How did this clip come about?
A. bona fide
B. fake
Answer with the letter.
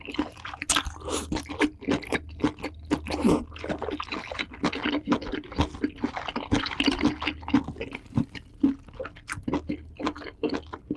A